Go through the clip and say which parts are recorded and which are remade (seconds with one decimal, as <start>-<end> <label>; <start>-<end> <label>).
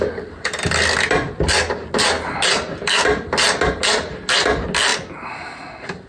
0.0-6.1 recorded